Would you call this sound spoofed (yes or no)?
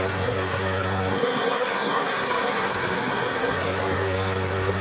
yes